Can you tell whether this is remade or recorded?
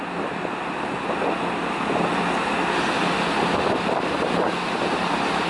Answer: recorded